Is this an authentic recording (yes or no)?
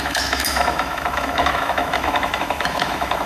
no